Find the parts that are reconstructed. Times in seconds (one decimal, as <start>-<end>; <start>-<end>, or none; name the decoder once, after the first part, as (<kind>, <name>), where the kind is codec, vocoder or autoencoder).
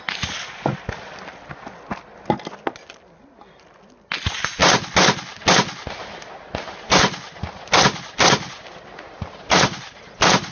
none